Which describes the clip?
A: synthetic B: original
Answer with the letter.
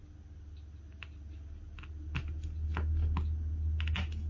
B